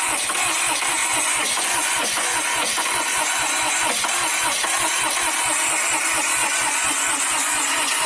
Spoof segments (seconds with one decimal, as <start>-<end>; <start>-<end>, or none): 1.0-3.7; 6.4-8.1